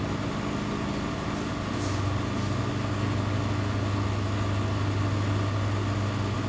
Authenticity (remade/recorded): recorded